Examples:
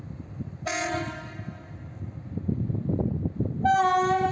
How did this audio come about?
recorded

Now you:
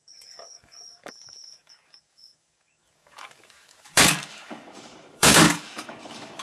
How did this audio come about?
remade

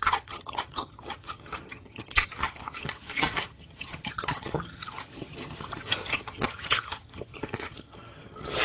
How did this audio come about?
remade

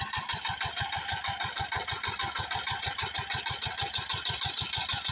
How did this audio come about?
recorded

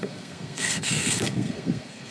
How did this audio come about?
remade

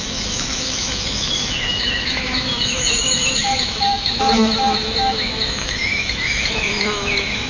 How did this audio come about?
remade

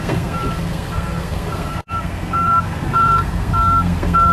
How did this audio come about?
remade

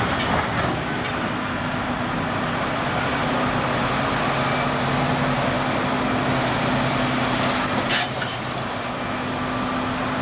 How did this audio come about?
recorded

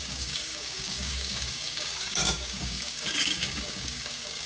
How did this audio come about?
remade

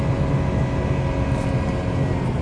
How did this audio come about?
recorded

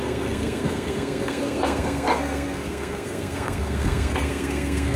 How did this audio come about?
remade